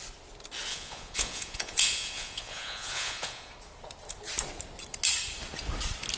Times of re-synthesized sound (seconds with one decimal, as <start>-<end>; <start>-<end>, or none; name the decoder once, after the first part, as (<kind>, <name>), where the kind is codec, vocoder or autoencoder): 0.7-3.5 (vocoder, Vocos)